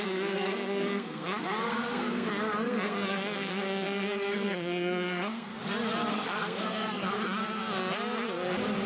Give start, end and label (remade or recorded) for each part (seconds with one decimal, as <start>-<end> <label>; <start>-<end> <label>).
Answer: 0.0-5.5 remade; 5.5-6.1 recorded; 6.1-7.4 remade; 7.4-8.9 recorded